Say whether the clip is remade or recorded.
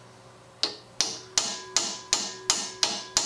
recorded